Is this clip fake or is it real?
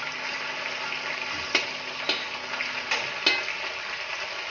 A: real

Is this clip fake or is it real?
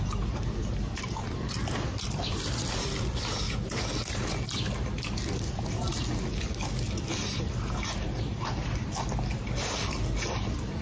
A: real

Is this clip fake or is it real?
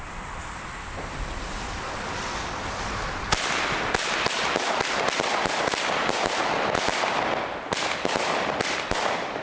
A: real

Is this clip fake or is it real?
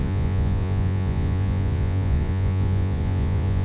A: fake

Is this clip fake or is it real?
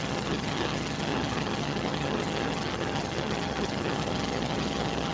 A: fake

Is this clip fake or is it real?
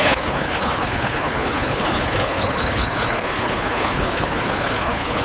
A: fake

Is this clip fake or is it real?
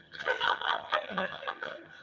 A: fake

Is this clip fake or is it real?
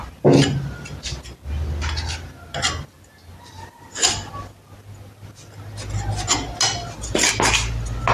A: real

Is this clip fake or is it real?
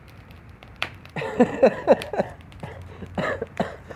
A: fake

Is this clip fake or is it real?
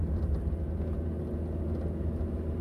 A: real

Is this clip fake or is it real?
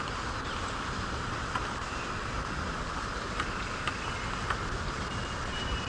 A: real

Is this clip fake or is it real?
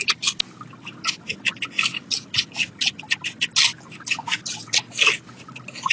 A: real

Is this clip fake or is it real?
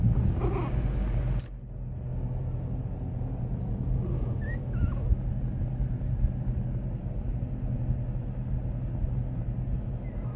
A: real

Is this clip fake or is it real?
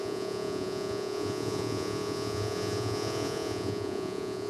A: fake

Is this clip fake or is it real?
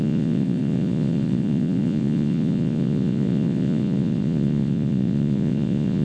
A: fake